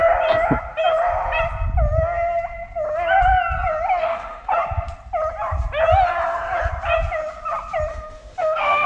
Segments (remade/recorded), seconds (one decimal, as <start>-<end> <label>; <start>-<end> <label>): 0.0-4.0 recorded; 4.0-4.5 remade; 4.5-7.9 recorded; 7.9-8.9 remade